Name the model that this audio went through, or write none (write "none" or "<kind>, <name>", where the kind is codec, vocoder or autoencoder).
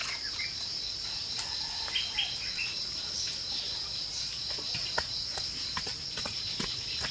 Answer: none